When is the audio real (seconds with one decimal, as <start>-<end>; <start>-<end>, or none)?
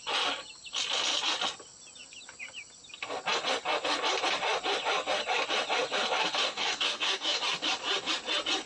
0.0-6.4; 7.4-8.7